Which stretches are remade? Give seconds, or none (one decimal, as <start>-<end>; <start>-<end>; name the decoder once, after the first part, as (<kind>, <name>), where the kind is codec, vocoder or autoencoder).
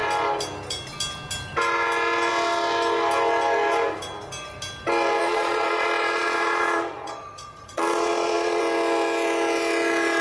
5.2-8.6 (vocoder, Vocos)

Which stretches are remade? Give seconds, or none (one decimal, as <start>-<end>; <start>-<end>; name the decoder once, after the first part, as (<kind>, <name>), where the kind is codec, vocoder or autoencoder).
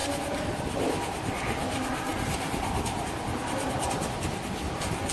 none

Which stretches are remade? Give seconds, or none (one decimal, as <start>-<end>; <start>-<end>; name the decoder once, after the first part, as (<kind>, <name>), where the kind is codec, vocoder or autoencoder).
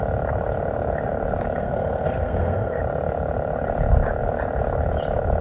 1.6-2.8 (codec, SNAC)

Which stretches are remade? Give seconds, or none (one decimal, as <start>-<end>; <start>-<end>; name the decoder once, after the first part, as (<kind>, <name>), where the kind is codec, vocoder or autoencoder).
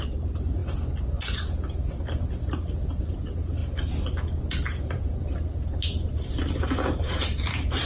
0.0-0.6 (vocoder, BigVGAN v2); 2.4-3.6; 4.5-7.9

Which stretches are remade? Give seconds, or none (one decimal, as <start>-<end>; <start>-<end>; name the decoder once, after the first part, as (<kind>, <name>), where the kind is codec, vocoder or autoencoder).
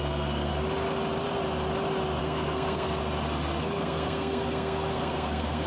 0.0-0.5 (codec, SNAC); 2.2-3.0; 3.6-5.7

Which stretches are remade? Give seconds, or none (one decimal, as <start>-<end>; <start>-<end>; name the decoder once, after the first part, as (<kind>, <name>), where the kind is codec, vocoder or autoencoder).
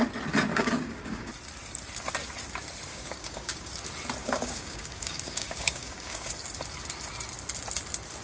0.5-1.3 (codec, DAC); 2.9-3.7; 4.2-6.3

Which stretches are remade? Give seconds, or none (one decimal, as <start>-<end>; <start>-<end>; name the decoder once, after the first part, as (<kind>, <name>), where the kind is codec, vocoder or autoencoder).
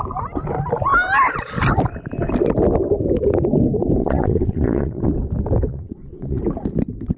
4.0-5.1 (vocoder, WaveNeXt); 5.7-6.4